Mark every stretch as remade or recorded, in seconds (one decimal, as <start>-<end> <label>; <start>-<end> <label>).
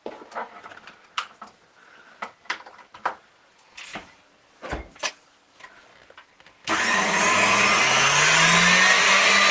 0.0-9.5 recorded